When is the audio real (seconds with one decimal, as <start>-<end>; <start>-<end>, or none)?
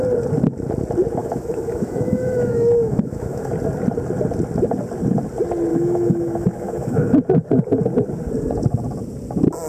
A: 0.0-1.2; 3.5-5.7; 7.2-9.7